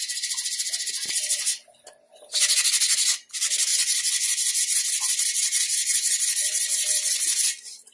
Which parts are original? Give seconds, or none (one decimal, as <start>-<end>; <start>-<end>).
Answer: 0.0-3.7; 4.6-5.5; 7.5-7.9

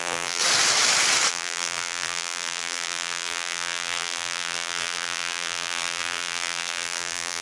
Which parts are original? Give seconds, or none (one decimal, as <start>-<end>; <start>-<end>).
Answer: 0.4-1.3